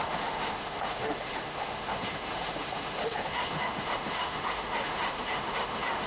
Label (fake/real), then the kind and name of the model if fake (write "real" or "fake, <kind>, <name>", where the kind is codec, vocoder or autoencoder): fake, autoencoder, DAC-VAE